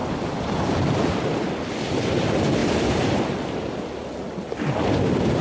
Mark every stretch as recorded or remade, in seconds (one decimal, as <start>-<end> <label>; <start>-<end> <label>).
0.0-2.6 recorded; 2.6-3.2 remade; 3.2-5.4 recorded